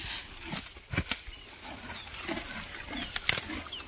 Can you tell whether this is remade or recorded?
recorded